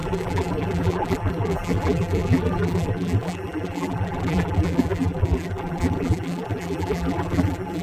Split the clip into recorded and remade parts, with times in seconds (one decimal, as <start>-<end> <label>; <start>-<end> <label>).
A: 0.0-7.8 remade